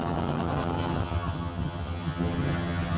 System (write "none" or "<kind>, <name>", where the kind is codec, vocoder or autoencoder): vocoder, HiFi-GAN